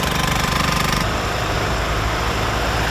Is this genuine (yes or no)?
no